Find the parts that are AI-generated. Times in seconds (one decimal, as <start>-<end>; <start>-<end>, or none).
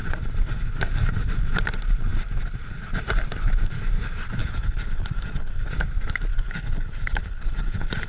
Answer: 4.4-5.7; 6.3-8.1